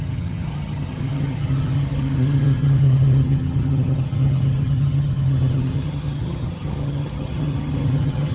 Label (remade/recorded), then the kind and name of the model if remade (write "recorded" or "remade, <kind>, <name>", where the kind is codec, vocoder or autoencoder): remade, vocoder, HiFi-GAN